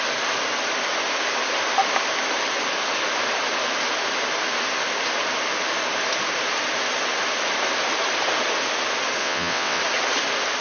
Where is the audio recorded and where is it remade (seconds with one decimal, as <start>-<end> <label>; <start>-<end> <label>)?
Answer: 0.0-9.2 recorded; 9.2-9.8 remade; 9.8-10.6 recorded